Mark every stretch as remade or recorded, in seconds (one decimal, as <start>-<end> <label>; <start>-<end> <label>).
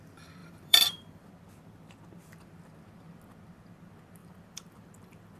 0.0-0.4 recorded; 0.4-1.3 remade; 1.3-4.2 recorded; 4.2-4.9 remade; 4.9-5.4 recorded